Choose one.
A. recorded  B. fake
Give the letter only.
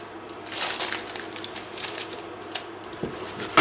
A